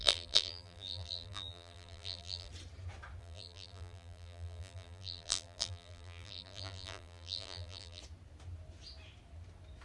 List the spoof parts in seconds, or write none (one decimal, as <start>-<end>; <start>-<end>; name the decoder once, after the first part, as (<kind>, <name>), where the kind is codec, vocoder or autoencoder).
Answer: 0.0-2.5 (vocoder, BigVGAN v2); 3.2-8.0